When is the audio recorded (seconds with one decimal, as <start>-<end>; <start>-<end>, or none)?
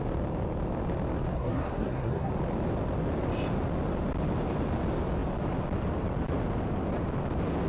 0.0-1.3; 2.3-7.7